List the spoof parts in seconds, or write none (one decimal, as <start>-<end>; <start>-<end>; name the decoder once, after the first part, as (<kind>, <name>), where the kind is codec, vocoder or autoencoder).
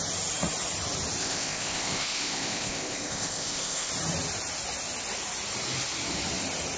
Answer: 1.2-3.9 (codec, ZipCodec)